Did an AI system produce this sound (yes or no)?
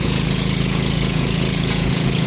yes